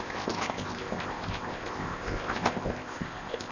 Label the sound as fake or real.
fake